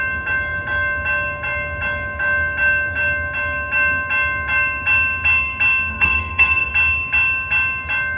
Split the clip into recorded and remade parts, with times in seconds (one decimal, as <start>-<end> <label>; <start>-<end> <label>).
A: 0.0-5.9 recorded; 5.9-6.7 remade; 6.7-8.2 recorded